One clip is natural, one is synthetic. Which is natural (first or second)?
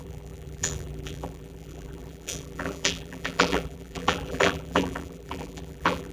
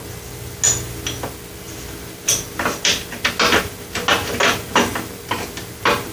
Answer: second